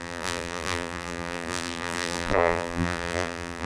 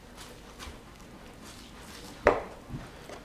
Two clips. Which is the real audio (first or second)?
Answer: second